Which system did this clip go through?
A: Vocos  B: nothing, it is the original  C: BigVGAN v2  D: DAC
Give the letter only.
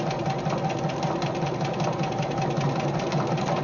B